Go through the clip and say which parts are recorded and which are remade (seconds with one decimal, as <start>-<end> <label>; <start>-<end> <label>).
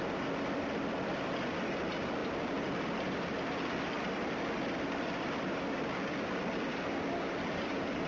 0.0-8.1 recorded